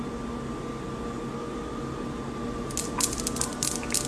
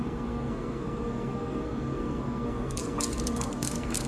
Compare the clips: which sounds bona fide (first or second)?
first